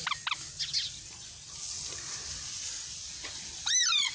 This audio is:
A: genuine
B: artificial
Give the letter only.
A